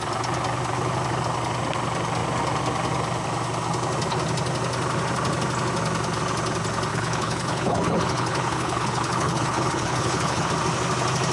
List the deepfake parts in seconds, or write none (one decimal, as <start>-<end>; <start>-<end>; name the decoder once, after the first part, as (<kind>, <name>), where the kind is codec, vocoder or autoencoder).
6.9-10.5 (codec, HILCodec)